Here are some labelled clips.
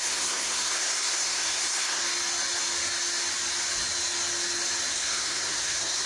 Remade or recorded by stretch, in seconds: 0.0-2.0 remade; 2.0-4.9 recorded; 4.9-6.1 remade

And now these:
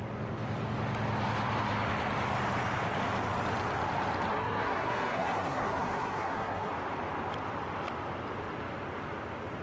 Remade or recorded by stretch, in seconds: 0.0-4.3 recorded; 4.3-6.7 remade; 6.7-9.6 recorded

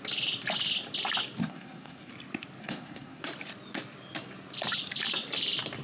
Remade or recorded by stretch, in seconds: 0.0-1.4 recorded; 1.4-2.1 remade; 2.1-2.6 recorded; 2.6-3.2 remade; 3.2-5.8 recorded

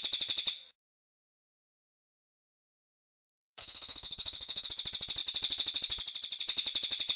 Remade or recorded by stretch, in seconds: 0.0-0.7 recorded; 0.7-4.7 remade; 4.7-7.2 recorded

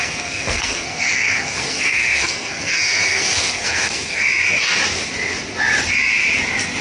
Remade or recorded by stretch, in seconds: 0.0-4.3 remade; 4.3-6.8 recorded